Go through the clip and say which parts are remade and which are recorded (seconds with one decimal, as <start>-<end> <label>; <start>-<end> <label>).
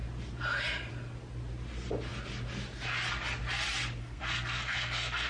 0.0-4.0 recorded; 4.0-5.3 remade